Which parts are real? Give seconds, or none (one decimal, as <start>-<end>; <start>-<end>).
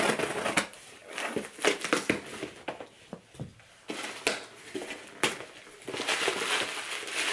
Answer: 0.0-7.3